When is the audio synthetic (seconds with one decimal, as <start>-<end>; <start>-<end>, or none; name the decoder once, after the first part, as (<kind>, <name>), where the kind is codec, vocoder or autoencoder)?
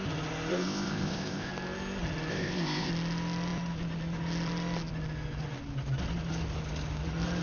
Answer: 0.5-1.5 (codec, ZipCodec); 2.3-2.9